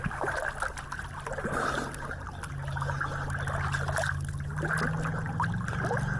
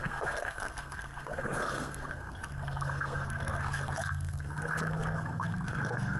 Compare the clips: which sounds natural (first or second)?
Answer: first